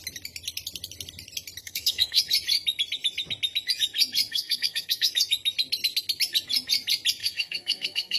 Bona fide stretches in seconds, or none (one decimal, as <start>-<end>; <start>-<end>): 0.0-1.6; 2.2-4.3; 5.1-7.2